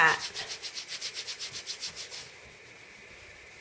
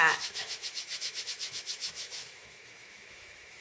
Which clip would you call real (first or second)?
first